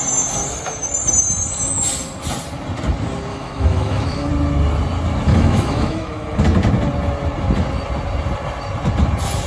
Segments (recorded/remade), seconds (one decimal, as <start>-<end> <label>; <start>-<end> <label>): 0.0-3.3 recorded; 3.3-4.3 remade; 4.3-5.3 recorded; 5.3-6.4 remade; 6.4-9.5 recorded

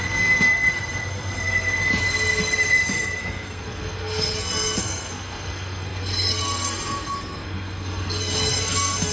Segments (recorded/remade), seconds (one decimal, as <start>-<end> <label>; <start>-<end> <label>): 0.0-1.9 remade; 1.9-2.4 recorded; 2.4-9.1 remade

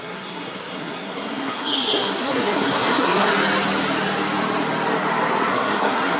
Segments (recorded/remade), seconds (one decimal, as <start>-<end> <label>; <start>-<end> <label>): 0.0-3.3 remade; 3.3-5.5 recorded; 5.5-6.2 remade

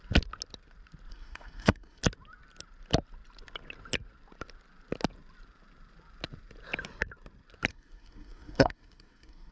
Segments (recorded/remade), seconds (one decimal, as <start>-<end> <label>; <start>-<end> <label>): 0.0-1.1 recorded; 1.1-2.0 remade; 2.0-7.7 recorded; 7.7-9.5 remade

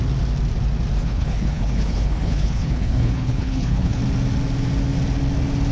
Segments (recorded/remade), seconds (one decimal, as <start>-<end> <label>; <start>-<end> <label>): 0.0-1.0 recorded; 1.0-4.0 remade; 4.0-5.7 recorded

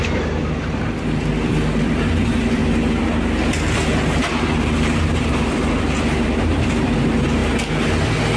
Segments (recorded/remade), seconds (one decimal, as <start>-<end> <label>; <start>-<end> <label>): 0.0-2.6 remade; 2.6-5.3 recorded; 5.3-7.4 remade; 7.4-8.4 recorded

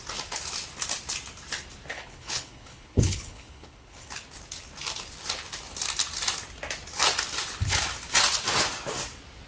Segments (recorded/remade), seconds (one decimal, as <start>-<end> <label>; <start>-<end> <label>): 0.0-1.9 recorded; 1.9-4.1 remade; 4.1-9.5 recorded

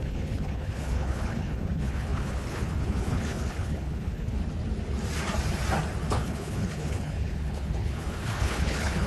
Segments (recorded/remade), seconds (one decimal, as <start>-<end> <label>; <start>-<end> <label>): 0.0-4.4 remade; 4.4-6.1 recorded; 6.1-9.1 remade